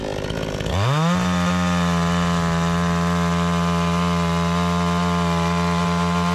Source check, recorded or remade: recorded